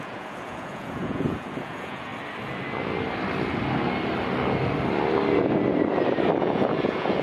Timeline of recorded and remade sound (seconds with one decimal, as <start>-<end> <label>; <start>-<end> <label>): 0.0-2.1 remade; 2.1-6.4 recorded; 6.4-7.2 remade